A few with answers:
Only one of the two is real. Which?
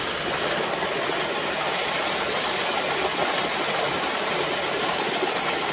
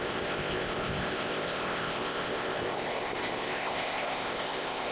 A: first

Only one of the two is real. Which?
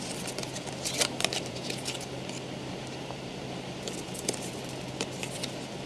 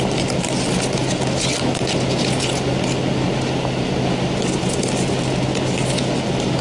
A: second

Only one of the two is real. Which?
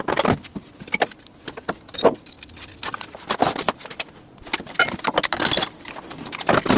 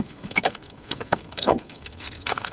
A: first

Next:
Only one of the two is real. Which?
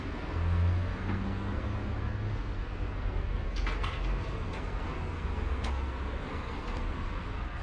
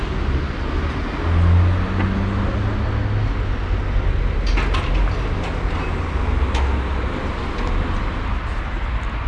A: second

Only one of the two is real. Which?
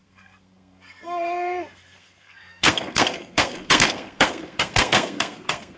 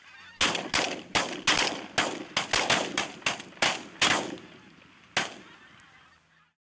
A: second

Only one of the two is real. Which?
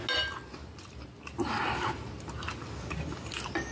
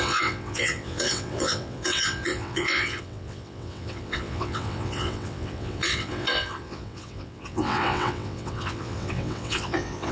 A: first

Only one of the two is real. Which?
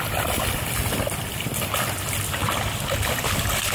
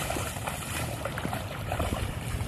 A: first